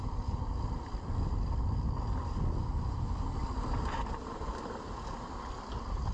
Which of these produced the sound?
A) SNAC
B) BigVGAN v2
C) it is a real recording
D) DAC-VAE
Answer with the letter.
C